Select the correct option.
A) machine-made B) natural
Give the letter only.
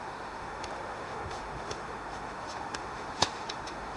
A